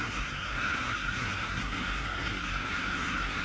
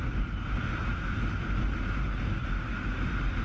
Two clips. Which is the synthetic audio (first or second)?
first